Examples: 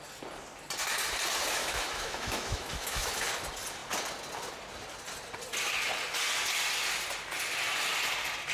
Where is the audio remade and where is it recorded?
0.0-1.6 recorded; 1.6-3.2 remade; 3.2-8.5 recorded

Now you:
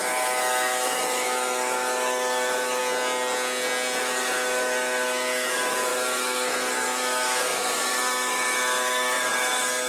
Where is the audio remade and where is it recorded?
0.0-2.8 remade; 2.8-4.0 recorded; 4.0-9.9 remade

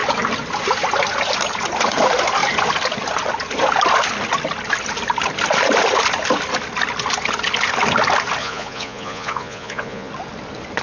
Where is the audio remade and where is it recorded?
0.0-8.4 recorded; 8.4-10.1 remade; 10.1-10.8 recorded

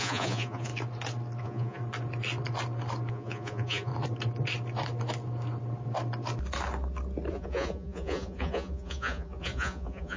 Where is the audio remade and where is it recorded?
0.0-0.7 remade; 0.7-1.4 recorded; 1.4-1.8 remade; 1.8-3.1 recorded; 3.1-3.9 remade; 3.9-7.3 recorded; 7.3-10.2 remade

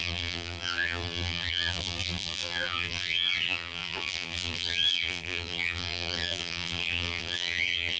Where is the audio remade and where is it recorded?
0.0-8.0 remade

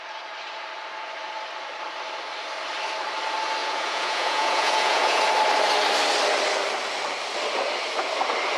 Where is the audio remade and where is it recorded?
0.0-3.6 recorded; 3.6-5.2 remade; 5.2-8.6 recorded